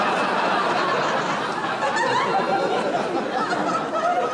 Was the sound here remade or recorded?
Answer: recorded